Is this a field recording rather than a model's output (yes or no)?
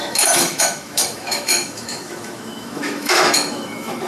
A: no